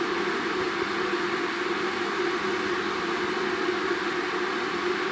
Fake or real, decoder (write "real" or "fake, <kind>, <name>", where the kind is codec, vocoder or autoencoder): real